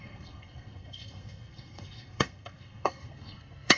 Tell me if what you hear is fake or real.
fake